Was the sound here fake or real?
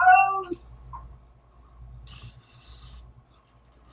real